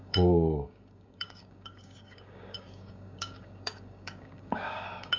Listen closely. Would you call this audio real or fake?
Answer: fake